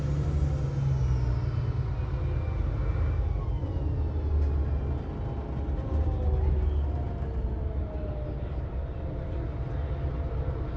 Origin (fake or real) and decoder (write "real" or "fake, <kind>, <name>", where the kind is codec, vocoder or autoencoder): real